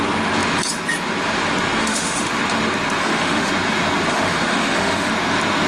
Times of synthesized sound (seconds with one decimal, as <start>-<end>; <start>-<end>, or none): 1.8-2.4; 3.0-3.5; 4.1-5.1